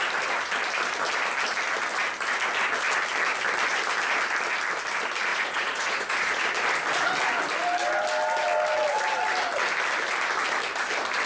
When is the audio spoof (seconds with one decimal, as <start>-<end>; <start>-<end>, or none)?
5.3-6.4